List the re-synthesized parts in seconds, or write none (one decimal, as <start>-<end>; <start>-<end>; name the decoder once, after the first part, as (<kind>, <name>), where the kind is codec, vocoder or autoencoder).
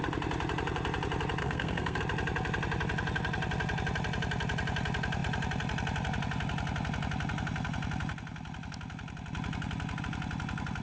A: 1.4-2.0 (codec, SNAC)